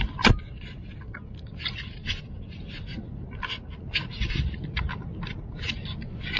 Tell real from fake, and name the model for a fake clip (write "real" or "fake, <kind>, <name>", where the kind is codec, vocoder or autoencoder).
real